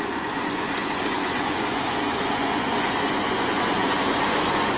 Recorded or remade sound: remade